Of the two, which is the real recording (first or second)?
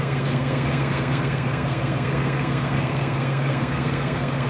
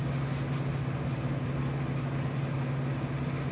second